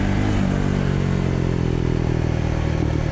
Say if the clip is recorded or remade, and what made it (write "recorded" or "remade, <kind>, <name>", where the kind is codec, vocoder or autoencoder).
recorded